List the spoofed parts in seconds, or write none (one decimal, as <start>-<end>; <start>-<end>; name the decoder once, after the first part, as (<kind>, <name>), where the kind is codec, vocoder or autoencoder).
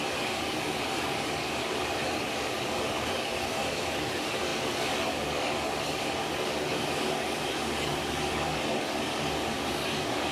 0.0-10.3 (codec, DAC)